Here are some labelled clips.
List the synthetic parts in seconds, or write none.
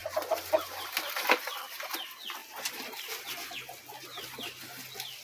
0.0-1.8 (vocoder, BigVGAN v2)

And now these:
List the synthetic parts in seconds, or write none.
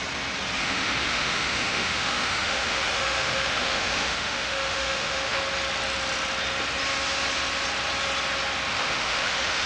0.6-5.4 (autoencoder, DAC-VAE); 8.7-9.7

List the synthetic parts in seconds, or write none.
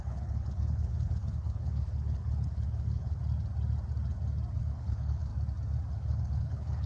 0.0-3.2 (codec, HILCodec); 4.6-5.3; 5.9-6.9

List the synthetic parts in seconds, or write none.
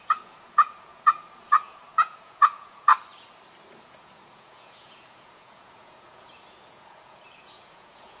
0.0-2.9 (vocoder, Vocos); 3.8-8.2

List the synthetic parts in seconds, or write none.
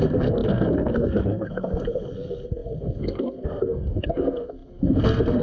0.0-5.4 (codec, SNAC)